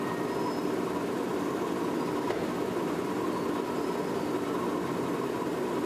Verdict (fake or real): real